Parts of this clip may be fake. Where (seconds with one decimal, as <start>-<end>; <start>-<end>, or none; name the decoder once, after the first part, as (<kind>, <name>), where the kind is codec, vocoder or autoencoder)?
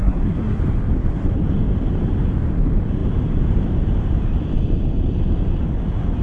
0.0-0.6 (codec, SNAC)